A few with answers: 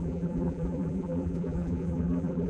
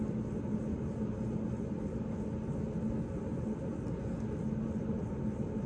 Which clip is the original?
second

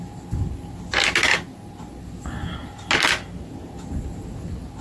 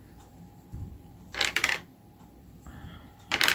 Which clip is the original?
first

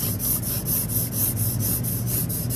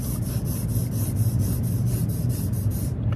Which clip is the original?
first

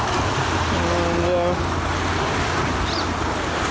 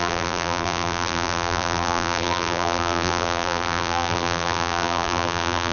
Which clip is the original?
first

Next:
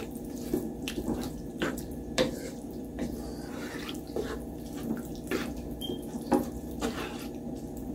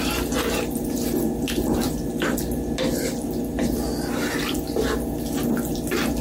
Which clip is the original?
second